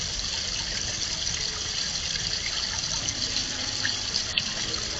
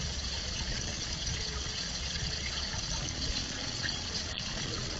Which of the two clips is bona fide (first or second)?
first